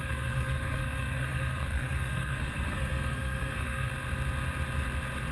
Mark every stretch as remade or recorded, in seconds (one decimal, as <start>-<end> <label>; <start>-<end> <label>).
0.0-3.9 remade; 3.9-5.3 recorded